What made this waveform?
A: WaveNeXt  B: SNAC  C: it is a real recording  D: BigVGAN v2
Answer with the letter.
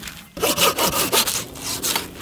C